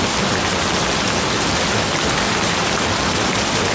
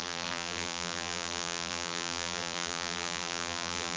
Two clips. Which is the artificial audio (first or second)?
second